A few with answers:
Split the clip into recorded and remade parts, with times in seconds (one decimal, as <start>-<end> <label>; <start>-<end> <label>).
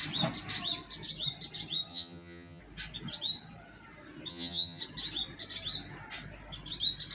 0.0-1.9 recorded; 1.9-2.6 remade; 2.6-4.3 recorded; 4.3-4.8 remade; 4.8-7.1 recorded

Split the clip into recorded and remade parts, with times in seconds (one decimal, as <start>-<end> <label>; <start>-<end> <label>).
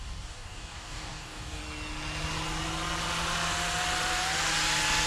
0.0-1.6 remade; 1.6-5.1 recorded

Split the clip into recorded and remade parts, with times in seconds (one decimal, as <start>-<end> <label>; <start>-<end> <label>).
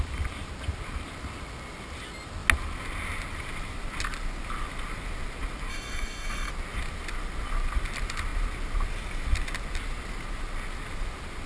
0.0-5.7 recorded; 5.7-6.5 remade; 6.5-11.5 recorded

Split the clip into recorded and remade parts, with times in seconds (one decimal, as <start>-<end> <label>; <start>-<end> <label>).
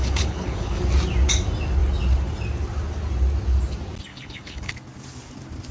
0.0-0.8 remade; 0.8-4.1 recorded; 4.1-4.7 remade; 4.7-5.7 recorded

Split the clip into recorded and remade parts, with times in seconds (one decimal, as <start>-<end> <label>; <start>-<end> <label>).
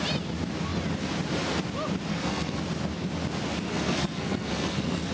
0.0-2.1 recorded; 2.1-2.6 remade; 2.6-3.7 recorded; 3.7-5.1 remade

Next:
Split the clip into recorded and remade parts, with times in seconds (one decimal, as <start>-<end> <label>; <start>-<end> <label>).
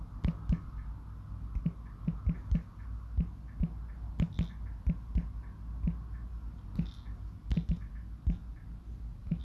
0.0-9.4 recorded